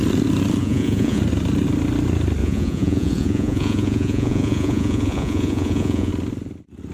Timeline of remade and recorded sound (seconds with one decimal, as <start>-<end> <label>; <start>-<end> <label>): 0.0-0.6 recorded; 0.6-1.2 remade; 1.2-2.4 recorded; 2.4-6.1 remade; 6.1-6.9 recorded